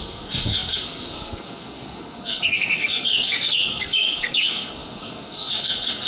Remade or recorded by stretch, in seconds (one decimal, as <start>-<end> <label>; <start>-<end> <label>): 0.0-6.1 remade